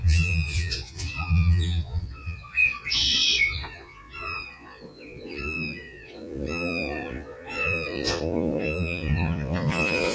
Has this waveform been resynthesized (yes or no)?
yes